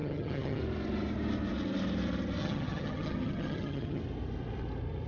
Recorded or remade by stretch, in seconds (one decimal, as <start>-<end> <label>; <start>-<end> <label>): 0.0-0.6 remade; 0.6-2.4 recorded; 2.4-4.0 remade; 4.0-5.1 recorded